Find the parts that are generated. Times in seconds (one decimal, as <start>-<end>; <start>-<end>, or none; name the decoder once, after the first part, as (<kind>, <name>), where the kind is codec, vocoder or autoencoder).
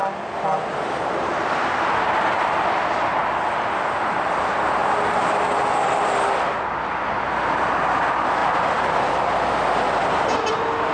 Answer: none